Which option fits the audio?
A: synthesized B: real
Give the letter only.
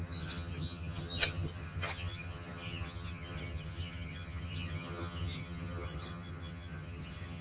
A